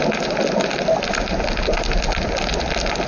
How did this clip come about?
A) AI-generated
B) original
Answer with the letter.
B